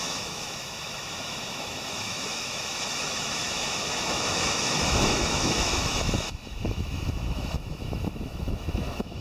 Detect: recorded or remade remade